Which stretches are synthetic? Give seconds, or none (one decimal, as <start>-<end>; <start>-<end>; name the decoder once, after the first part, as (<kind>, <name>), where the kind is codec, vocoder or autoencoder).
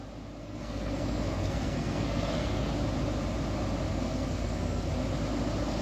0.4-2.7 (codec, SNAC); 3.9-4.9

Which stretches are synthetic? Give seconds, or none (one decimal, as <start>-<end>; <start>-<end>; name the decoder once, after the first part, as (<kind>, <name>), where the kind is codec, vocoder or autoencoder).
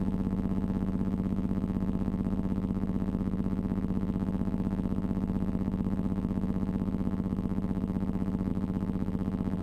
0.0-9.6 (vocoder, BigVGAN v2)